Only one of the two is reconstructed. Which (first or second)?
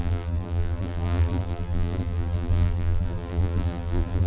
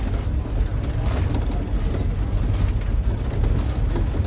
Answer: first